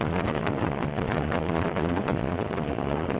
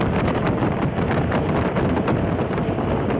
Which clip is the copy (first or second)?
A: first